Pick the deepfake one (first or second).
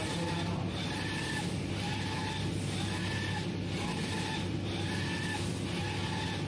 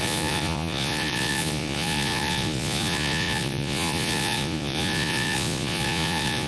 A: second